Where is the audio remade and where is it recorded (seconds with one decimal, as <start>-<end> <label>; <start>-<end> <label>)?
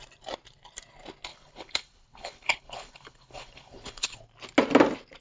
0.0-1.3 recorded; 1.3-4.2 remade; 4.2-5.2 recorded